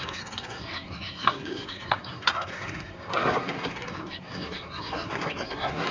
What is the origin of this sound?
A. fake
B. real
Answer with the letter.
A